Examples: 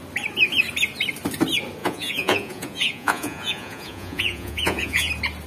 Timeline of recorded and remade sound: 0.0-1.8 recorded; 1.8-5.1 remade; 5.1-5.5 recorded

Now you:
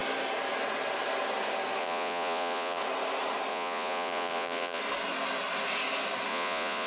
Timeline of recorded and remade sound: 0.0-1.8 recorded; 1.8-2.8 remade; 2.8-3.5 recorded; 3.5-4.8 remade; 4.8-6.3 recorded; 6.3-6.9 remade

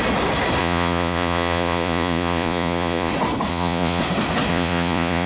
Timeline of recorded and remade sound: 0.0-0.6 recorded; 0.6-3.1 remade; 3.1-3.5 recorded; 3.5-4.0 remade; 4.0-4.5 recorded; 4.5-5.3 remade

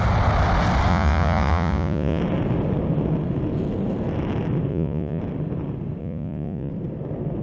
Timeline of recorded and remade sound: 0.0-0.9 recorded; 0.9-2.2 remade; 2.2-4.7 recorded; 4.7-5.2 remade; 5.2-6.0 recorded; 6.0-6.7 remade; 6.7-7.4 recorded

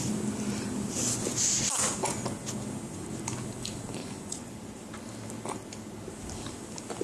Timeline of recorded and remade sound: 0.0-4.0 recorded; 4.0-4.5 remade; 4.5-7.0 recorded

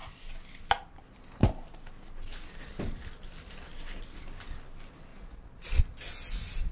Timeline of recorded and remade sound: 0.0-5.1 recorded; 5.1-5.8 remade; 5.8-6.7 recorded

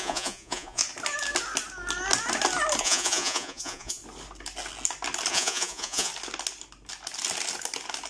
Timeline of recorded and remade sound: 0.0-0.8 remade; 0.8-2.8 recorded; 2.8-4.0 remade; 4.0-5.3 recorded; 5.3-6.1 remade; 6.1-8.1 recorded

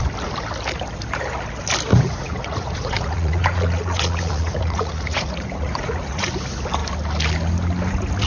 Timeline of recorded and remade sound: 0.0-1.9 recorded; 1.9-6.3 remade; 6.3-8.3 recorded